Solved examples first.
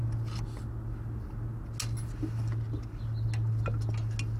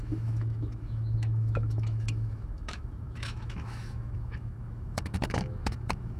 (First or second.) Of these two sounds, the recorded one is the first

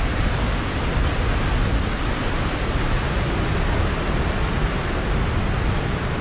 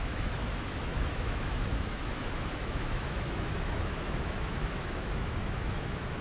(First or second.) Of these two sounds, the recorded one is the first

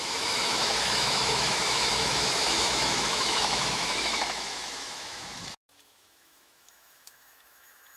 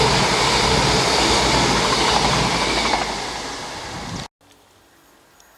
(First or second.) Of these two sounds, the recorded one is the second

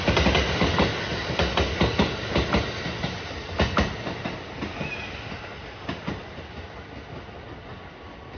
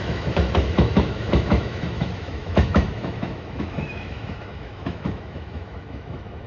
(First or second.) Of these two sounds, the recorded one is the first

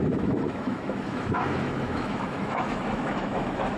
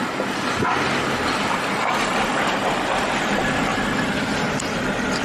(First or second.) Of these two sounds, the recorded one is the second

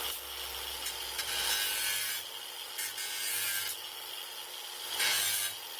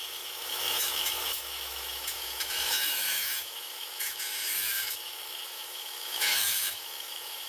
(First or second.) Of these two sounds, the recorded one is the first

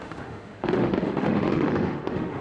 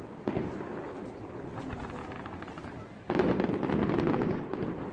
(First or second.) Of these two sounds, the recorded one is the second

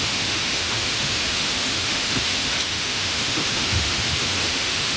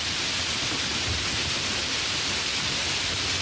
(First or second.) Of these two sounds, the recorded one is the second